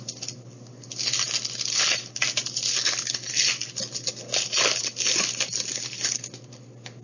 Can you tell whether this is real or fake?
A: real